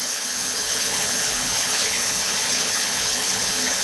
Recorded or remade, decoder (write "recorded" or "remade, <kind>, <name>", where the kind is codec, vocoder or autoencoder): remade, codec, HILCodec